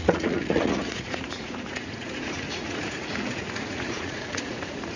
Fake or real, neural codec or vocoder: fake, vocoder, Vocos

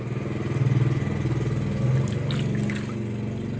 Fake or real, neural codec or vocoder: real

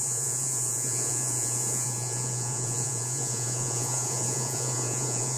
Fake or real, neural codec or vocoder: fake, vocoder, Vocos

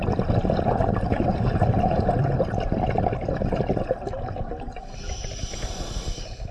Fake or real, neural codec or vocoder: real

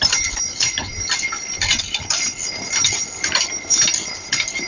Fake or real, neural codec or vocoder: real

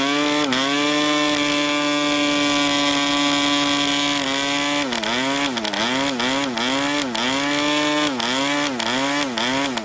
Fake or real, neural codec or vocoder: real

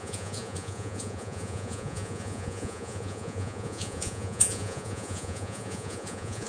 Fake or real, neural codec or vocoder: fake, vocoder, Vocos